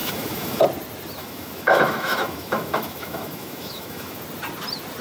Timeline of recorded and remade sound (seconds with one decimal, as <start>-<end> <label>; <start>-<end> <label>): 0.0-0.6 remade; 0.6-1.2 recorded; 1.2-4.2 remade; 4.2-5.0 recorded

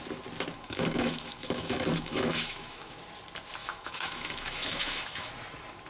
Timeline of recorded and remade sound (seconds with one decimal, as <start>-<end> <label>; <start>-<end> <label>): 0.0-0.5 recorded; 0.5-3.0 remade; 3.0-3.6 recorded; 3.6-5.3 remade; 5.3-5.9 recorded

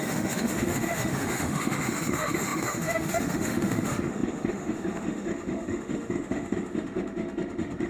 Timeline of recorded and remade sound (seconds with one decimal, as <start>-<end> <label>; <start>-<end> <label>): 0.0-7.9 remade

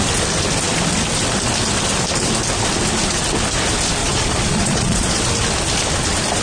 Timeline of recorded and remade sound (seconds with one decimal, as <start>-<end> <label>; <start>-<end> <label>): 0.0-4.0 recorded; 4.0-5.3 remade; 5.3-6.4 recorded

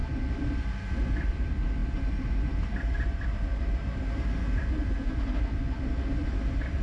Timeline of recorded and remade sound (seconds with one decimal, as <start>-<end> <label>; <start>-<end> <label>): 0.0-6.8 recorded

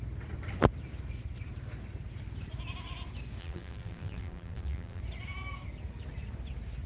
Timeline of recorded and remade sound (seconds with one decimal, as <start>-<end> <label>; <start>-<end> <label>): 0.0-3.4 recorded; 3.4-5.0 remade; 5.0-6.9 recorded